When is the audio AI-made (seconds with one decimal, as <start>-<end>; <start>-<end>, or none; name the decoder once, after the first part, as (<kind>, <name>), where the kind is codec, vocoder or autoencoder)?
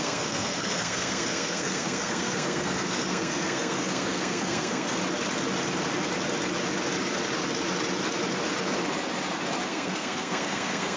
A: 0.0-5.0 (codec, SNAC); 9.7-11.0